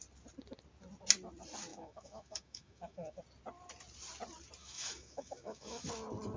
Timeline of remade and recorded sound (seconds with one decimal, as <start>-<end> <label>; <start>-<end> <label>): 0.0-1.7 recorded; 1.7-3.2 remade; 3.2-4.6 recorded; 4.6-5.9 remade; 5.9-6.4 recorded